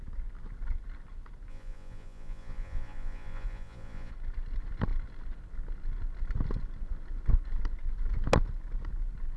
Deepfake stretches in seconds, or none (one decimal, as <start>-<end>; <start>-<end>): 1.5-4.1